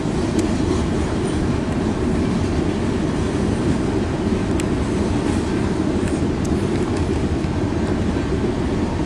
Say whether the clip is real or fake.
real